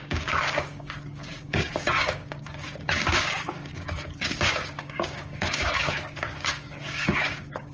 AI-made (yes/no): yes